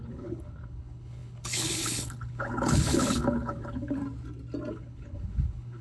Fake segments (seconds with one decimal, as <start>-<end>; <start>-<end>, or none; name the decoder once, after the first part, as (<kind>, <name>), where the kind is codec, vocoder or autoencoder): 0.0-4.0 (codec, HILCodec); 4.7-5.8